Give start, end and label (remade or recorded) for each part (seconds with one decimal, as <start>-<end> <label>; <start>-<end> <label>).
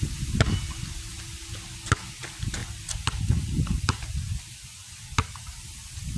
0.0-6.2 recorded